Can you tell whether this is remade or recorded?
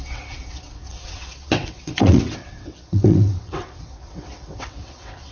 remade